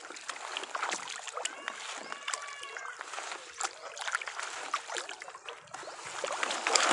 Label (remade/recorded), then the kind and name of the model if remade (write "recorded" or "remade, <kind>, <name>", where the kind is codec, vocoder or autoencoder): recorded